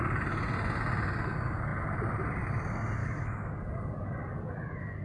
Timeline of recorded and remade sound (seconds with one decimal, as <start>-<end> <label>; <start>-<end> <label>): 0.0-3.0 recorded; 3.0-3.5 remade; 3.5-5.0 recorded